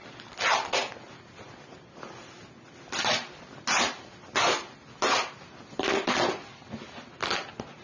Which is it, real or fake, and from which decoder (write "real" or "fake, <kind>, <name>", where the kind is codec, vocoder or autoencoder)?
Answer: real